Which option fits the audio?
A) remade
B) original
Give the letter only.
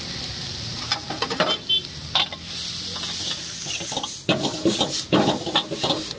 B